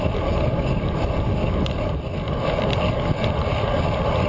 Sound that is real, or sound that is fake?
real